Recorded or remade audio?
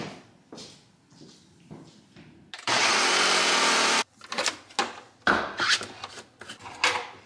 recorded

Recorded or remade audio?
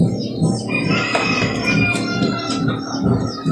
recorded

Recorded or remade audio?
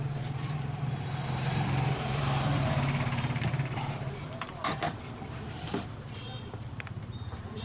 remade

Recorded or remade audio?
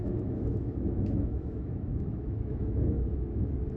remade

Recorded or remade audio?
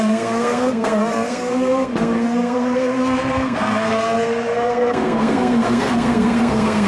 remade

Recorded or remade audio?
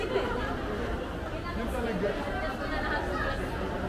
recorded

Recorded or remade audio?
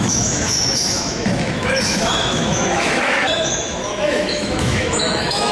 remade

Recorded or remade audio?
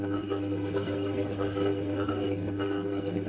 remade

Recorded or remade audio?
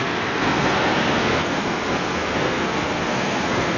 remade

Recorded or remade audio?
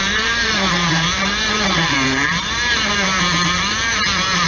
remade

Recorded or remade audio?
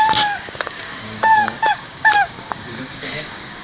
remade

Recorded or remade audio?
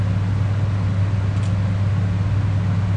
recorded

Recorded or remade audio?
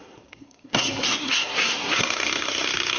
remade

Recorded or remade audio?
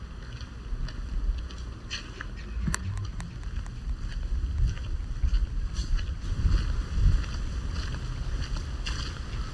recorded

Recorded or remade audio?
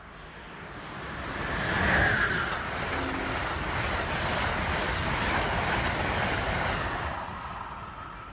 recorded